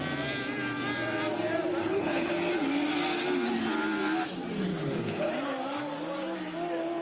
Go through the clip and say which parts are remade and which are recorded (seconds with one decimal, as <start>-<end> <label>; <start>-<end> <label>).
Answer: 0.0-1.8 recorded; 1.8-2.3 remade; 2.3-4.7 recorded; 4.7-5.3 remade; 5.3-7.0 recorded